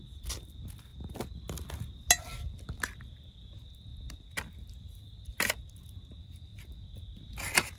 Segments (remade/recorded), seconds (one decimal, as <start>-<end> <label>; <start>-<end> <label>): 0.0-7.8 recorded